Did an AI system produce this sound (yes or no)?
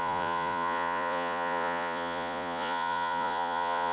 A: yes